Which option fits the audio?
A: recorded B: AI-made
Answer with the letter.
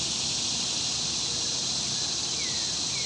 A